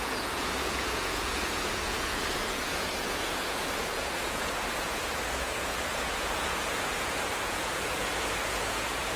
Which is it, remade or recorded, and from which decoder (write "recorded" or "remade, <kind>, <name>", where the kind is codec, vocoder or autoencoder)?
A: remade, vocoder, Vocos